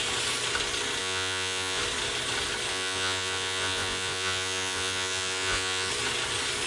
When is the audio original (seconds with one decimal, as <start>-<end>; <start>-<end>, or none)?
0.0-1.0; 1.8-2.7; 5.9-6.7